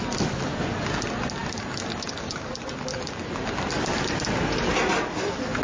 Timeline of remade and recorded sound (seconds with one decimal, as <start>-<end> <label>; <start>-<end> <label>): 0.0-5.6 recorded